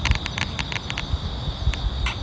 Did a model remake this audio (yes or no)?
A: no